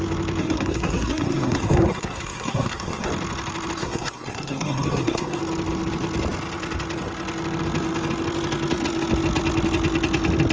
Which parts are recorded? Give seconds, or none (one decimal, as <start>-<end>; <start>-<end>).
0.0-0.4; 3.1-3.8; 5.4-10.5

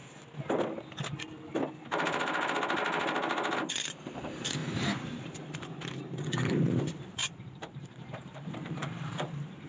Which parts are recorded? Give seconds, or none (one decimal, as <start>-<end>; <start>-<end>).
0.0-3.7

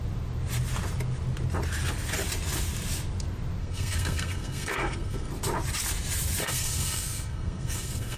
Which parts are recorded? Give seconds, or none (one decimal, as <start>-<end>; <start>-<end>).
0.0-3.6; 5.3-6.4

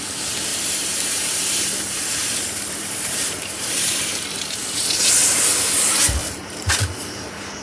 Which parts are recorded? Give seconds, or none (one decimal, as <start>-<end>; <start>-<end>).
0.0-0.5; 4.6-6.2; 6.7-7.6

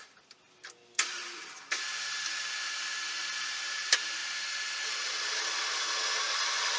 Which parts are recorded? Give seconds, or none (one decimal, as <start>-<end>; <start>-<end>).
0.0-6.8

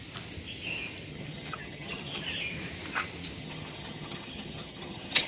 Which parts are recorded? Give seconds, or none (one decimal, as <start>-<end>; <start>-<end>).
0.0-1.1; 2.2-3.4

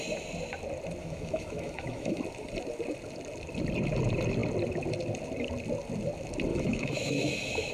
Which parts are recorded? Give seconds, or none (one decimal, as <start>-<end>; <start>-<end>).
0.0-1.0; 2.2-6.5